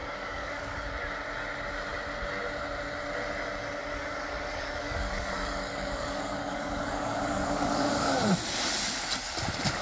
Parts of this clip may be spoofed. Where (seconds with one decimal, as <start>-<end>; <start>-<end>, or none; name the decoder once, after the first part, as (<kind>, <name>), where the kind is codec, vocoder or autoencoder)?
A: 0.0-0.9 (codec, DAC); 3.8-8.2